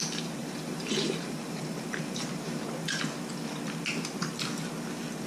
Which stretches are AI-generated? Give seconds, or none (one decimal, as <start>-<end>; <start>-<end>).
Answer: 0.4-2.7